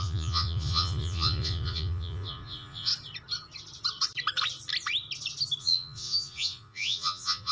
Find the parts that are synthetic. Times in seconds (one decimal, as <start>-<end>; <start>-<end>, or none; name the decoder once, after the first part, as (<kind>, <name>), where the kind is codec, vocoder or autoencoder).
0.0-2.9 (vocoder, Vocos); 5.6-7.5